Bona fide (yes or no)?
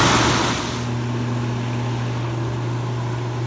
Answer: yes